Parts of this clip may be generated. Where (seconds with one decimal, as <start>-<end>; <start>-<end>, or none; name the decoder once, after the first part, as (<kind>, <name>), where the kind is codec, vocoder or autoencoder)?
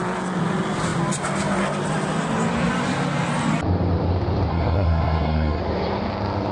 4.5-5.6 (codec, SNAC)